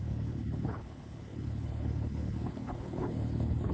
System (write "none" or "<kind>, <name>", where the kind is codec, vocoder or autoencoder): codec, HILCodec